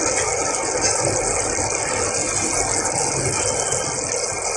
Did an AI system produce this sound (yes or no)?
no